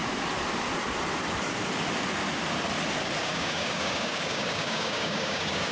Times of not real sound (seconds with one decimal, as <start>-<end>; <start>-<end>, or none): 3.2-5.7